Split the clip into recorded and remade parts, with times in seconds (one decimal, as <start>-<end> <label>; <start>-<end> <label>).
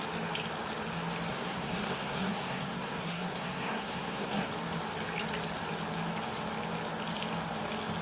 0.0-1.3 recorded; 1.3-4.5 remade; 4.5-8.0 recorded